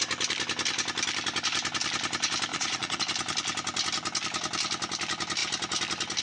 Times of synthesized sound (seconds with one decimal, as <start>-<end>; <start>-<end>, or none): 2.5-3.0